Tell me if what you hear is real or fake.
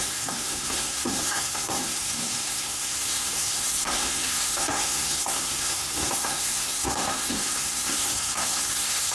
fake